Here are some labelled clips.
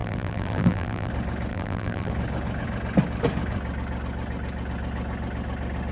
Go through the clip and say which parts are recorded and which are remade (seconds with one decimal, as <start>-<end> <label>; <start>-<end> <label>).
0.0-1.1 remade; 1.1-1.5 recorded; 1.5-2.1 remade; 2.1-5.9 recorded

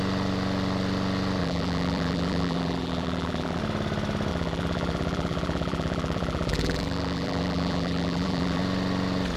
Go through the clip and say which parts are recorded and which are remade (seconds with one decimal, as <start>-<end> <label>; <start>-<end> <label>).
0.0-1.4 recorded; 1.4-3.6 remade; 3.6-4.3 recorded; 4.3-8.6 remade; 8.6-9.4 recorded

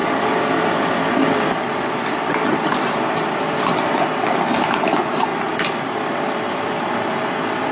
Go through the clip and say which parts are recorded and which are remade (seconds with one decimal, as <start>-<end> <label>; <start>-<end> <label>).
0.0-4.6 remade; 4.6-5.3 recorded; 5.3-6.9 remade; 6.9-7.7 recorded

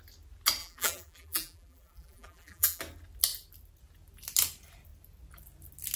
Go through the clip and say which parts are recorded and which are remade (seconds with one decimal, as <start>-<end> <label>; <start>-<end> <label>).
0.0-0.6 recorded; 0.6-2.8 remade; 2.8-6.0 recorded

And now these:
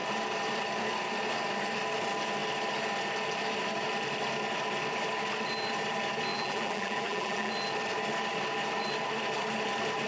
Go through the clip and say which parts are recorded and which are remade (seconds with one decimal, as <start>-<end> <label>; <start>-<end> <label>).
0.0-6.3 recorded; 6.3-7.5 remade; 7.5-10.1 recorded

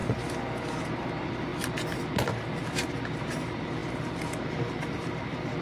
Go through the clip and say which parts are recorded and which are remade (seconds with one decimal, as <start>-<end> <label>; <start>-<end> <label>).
0.0-5.6 recorded

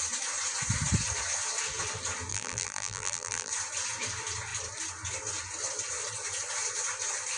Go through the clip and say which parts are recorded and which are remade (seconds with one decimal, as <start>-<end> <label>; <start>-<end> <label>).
0.0-2.3 recorded; 2.3-3.5 remade; 3.5-7.4 recorded

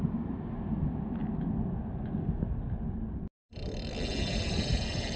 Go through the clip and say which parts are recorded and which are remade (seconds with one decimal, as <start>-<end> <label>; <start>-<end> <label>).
0.0-1.2 remade; 1.2-4.3 recorded; 4.3-5.2 remade